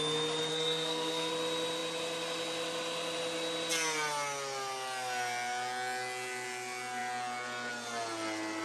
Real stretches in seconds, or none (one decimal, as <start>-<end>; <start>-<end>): 0.0-0.5; 1.3-8.6